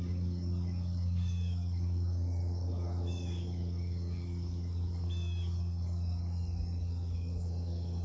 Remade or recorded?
remade